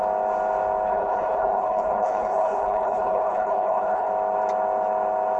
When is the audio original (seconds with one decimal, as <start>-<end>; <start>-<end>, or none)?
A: 0.0-0.9; 4.1-5.4

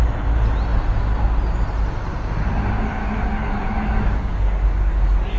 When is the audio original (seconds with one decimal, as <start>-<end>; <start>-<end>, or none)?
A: 0.0-3.0

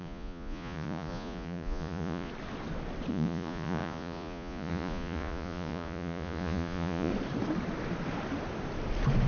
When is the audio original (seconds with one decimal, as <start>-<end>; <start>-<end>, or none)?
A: 2.3-3.1; 7.1-9.3